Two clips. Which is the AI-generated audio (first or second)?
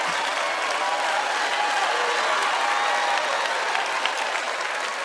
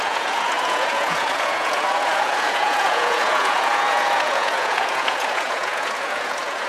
second